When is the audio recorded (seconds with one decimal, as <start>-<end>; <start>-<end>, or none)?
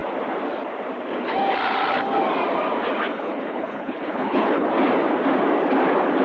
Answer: 0.0-3.1; 4.7-6.2